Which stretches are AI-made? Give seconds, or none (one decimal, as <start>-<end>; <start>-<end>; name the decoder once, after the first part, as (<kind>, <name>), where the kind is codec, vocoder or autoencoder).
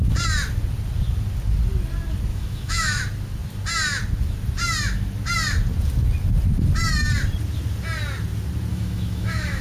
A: 2.3-3.0 (autoencoder, DAC-VAE); 8.7-9.6